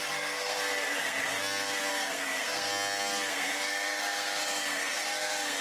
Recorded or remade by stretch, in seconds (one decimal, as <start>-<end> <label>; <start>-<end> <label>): 0.0-1.2 remade; 1.2-1.9 recorded; 1.9-2.7 remade; 2.7-3.3 recorded; 3.3-5.6 remade